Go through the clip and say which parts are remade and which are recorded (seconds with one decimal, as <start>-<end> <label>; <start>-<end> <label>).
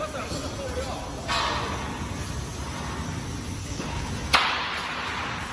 0.0-3.6 recorded; 3.6-4.1 remade; 4.1-5.5 recorded